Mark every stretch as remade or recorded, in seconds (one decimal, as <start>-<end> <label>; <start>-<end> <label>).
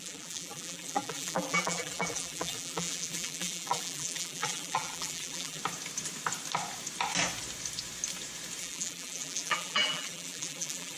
0.0-5.6 remade; 5.6-8.6 recorded; 8.6-11.0 remade